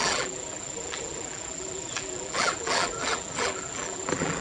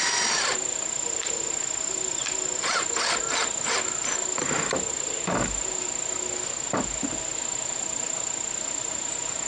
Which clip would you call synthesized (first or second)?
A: first